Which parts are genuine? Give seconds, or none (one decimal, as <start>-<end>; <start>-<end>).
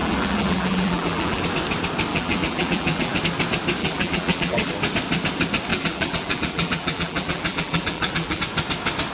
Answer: 1.4-2.1; 3.2-3.8; 4.7-5.7; 8.4-9.1